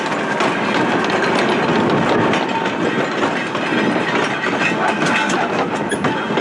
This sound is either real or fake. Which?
real